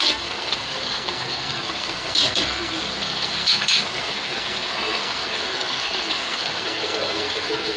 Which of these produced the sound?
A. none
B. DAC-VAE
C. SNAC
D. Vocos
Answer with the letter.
C